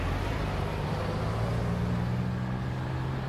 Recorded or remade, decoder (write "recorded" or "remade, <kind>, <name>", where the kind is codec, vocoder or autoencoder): recorded